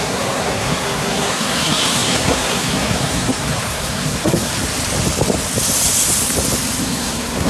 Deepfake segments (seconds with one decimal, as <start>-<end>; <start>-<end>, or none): 0.0-4.5; 6.8-7.5